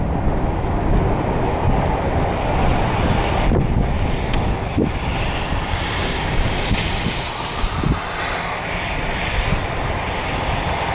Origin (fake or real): real